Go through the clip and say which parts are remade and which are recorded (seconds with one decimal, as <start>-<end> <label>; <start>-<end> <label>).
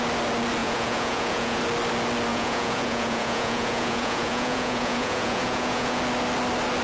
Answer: 0.0-0.6 recorded; 0.6-1.6 remade; 1.6-2.3 recorded; 2.3-6.0 remade; 6.0-6.8 recorded